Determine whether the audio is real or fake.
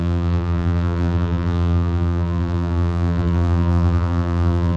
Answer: fake